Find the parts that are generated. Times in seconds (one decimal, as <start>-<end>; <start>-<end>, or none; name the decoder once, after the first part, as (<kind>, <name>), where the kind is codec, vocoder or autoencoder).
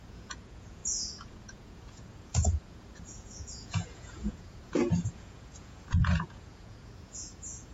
0.0-7.7 (vocoder, Vocos)